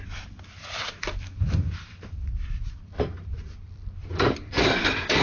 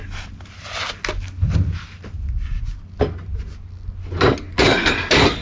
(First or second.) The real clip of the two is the second